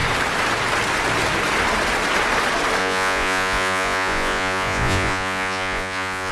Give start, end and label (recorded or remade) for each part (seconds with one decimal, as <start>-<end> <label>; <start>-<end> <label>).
0.0-2.8 recorded; 2.8-6.3 remade